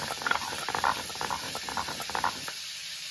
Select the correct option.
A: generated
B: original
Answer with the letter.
B